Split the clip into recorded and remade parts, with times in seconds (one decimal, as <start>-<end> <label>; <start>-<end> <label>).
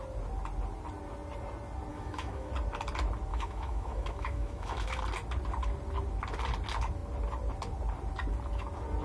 0.0-1.9 recorded; 1.9-2.5 remade; 2.5-3.3 recorded; 3.3-5.0 remade; 5.0-9.0 recorded